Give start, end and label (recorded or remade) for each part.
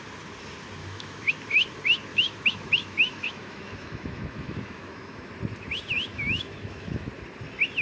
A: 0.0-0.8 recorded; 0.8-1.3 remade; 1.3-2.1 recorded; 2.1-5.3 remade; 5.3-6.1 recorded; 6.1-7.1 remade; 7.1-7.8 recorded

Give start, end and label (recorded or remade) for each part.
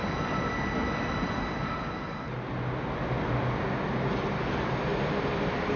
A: 0.0-5.8 recorded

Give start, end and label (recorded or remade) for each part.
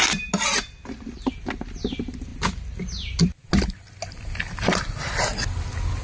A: 0.0-6.0 recorded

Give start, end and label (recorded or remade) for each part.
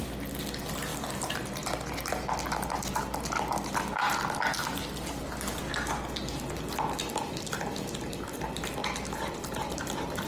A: 0.0-10.3 recorded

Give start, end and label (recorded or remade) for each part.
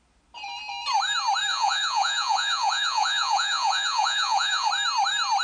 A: 0.0-1.5 recorded; 1.5-4.7 remade; 4.7-5.4 recorded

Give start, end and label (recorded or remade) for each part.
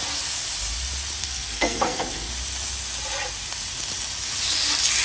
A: 0.0-1.2 recorded; 1.2-2.3 remade; 2.3-5.0 recorded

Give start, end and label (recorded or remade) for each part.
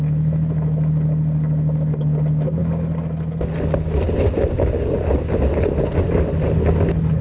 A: 0.0-7.2 recorded